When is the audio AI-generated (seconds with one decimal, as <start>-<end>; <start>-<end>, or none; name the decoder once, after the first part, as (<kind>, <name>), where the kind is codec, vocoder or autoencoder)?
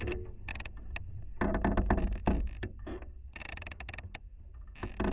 none